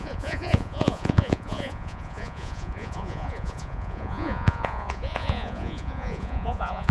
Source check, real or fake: fake